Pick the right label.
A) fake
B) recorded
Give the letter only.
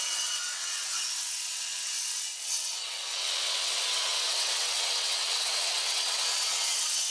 A